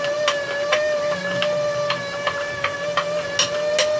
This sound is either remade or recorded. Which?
recorded